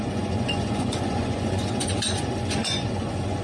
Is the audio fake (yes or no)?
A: yes